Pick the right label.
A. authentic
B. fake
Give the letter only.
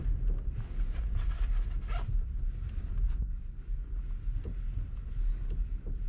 A